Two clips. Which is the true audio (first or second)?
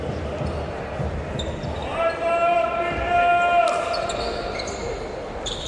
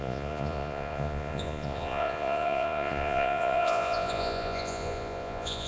first